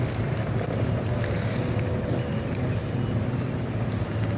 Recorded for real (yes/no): yes